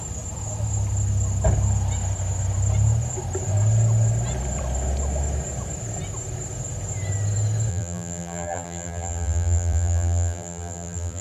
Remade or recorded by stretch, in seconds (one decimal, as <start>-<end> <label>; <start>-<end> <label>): 0.0-7.7 recorded; 7.7-11.2 remade